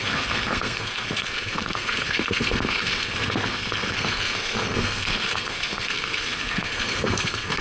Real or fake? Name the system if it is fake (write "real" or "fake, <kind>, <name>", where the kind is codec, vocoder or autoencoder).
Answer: fake, codec, SNAC